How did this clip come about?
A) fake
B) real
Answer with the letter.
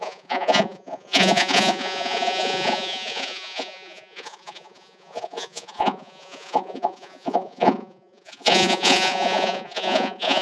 A